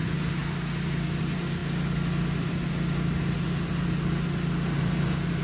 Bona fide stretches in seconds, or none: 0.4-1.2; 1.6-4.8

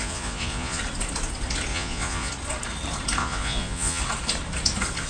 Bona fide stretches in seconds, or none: 0.8-1.7; 2.3-3.2; 4.0-5.1